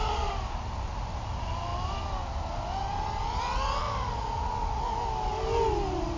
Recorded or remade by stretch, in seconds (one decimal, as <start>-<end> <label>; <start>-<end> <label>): 0.0-6.2 recorded

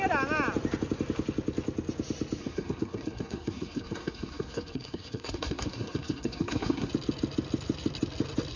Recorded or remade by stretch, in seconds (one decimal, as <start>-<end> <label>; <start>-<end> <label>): 0.0-2.4 recorded; 2.4-6.9 remade; 6.9-8.6 recorded

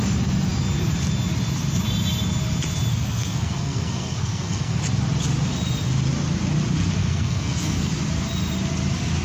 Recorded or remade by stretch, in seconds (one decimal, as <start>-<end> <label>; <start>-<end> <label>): 0.0-2.9 recorded; 2.9-4.8 remade; 4.8-7.0 recorded; 7.0-7.9 remade; 7.9-9.2 recorded

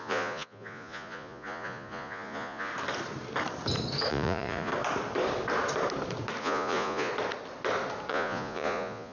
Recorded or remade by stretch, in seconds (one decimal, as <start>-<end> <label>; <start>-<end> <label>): 0.0-2.7 remade; 2.7-4.1 recorded; 4.1-4.7 remade; 4.7-6.4 recorded; 6.4-7.1 remade; 7.1-8.1 recorded; 8.1-9.1 remade